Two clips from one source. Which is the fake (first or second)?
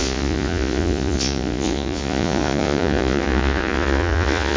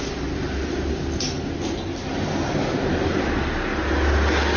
first